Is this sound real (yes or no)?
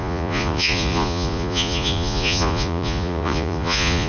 no